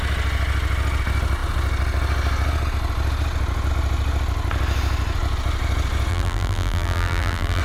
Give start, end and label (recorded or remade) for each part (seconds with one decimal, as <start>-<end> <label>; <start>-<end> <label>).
0.0-6.1 recorded; 6.1-7.6 remade